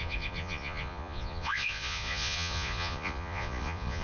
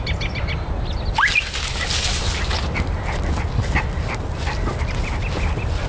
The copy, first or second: first